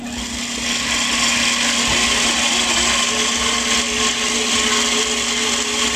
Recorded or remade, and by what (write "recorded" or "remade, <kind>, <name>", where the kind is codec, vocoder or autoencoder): recorded